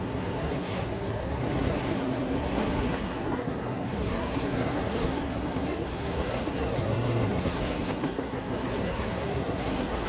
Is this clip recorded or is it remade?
remade